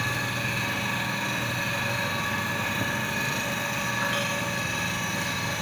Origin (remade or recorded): recorded